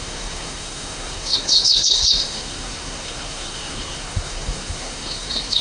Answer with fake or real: fake